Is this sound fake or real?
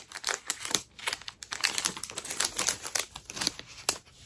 real